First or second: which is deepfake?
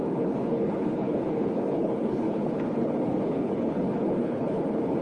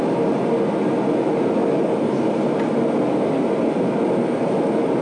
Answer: first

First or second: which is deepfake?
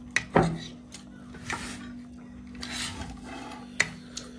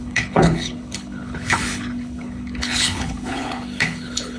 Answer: second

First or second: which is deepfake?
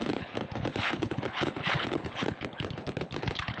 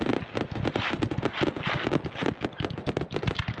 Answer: first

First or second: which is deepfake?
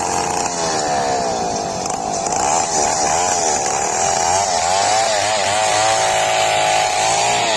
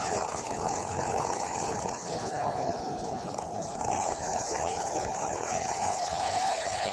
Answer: second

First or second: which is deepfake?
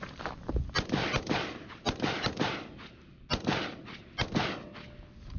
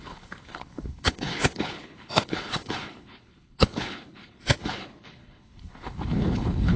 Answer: second